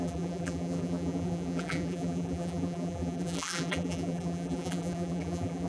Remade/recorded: remade